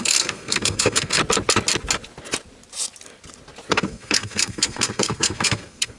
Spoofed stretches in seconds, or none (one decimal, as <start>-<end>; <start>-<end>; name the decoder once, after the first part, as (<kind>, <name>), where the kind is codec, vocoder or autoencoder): 0.0-1.2 (codec, SNAC); 3.7-6.0